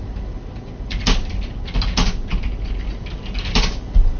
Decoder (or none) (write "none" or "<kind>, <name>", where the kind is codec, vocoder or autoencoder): none